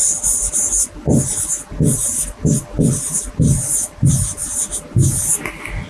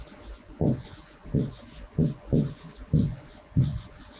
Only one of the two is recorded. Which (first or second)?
first